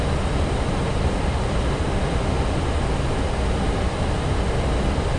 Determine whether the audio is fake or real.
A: real